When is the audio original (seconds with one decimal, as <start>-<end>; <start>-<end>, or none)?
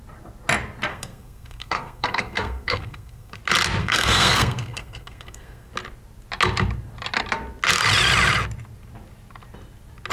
0.0-0.9; 3.4-3.8; 5.7-10.1